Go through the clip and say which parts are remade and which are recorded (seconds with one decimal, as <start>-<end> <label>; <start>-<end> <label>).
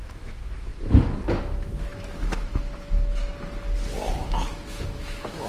0.0-0.7 remade; 0.7-1.4 recorded; 1.4-3.2 remade; 3.2-4.1 recorded; 4.1-5.5 remade